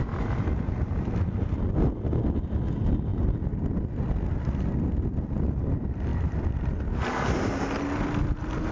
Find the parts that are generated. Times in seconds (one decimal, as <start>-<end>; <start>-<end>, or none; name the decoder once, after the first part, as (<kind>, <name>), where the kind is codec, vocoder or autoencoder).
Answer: 6.1-7.1 (vocoder, BigVGAN v2)